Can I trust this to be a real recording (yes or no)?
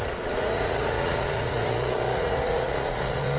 no